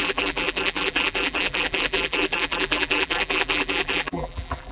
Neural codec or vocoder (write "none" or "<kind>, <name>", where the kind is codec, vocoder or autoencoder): vocoder, BigVGAN v2